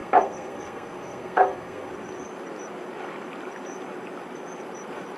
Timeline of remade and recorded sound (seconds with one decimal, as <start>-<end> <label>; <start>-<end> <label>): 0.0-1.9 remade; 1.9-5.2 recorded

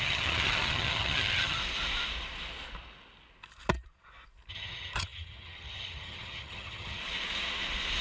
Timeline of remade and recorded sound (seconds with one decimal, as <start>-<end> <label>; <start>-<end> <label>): 0.0-1.6 remade; 1.6-4.5 recorded; 4.5-7.0 remade; 7.0-8.0 recorded

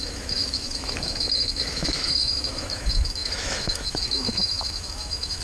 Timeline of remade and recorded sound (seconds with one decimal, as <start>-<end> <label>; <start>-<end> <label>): 0.0-5.4 remade